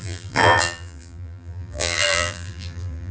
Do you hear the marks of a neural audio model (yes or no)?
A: yes